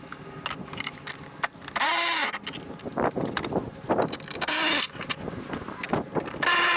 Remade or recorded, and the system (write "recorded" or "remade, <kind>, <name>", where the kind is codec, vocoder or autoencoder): recorded